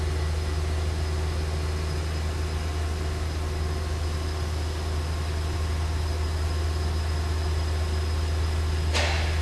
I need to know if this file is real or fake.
real